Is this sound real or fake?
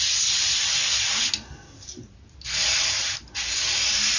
real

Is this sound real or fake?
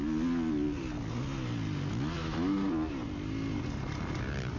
real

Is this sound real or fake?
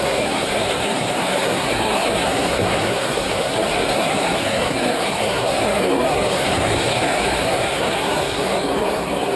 fake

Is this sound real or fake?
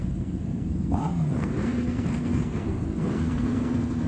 fake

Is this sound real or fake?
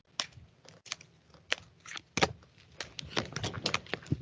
real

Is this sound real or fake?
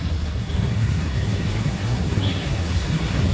fake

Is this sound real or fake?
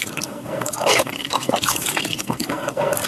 fake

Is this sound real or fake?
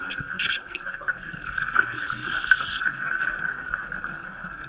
fake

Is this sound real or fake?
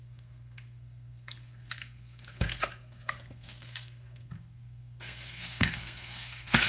fake